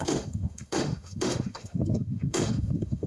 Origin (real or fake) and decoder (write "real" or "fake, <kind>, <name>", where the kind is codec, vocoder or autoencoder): fake, autoencoder, DAC-VAE